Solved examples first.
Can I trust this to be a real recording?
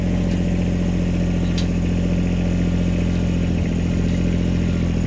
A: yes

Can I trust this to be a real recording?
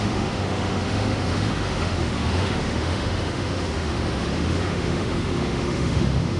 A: no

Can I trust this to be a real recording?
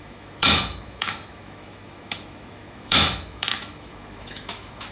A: no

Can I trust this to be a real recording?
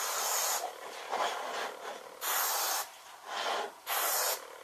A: yes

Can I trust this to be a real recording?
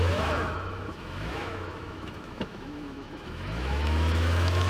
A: no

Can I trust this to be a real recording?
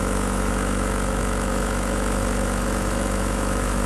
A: no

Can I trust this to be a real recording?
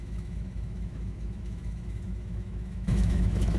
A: no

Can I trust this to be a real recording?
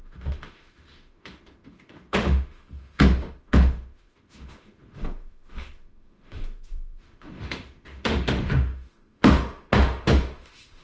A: no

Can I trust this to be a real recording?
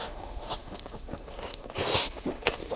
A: no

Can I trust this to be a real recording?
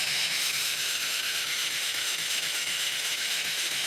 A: no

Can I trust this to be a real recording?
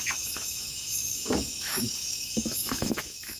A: no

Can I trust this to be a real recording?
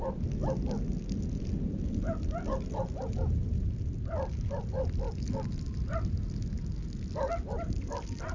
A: yes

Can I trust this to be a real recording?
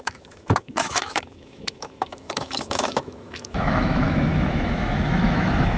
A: no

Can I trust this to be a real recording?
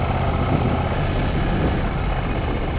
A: yes